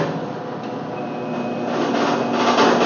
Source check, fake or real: real